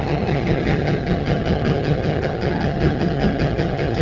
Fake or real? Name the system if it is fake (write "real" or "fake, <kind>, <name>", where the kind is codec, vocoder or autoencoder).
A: fake, vocoder, HiFi-GAN